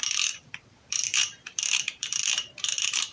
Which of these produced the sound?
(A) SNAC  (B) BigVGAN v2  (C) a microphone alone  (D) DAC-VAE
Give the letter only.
B